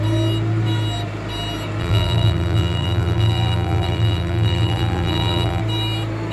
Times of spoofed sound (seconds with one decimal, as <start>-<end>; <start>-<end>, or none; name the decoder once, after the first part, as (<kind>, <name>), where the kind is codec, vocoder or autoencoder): 1.8-5.6 (vocoder, BigVGAN v2)